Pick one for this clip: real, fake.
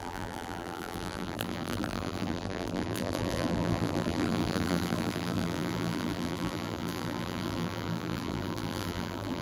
fake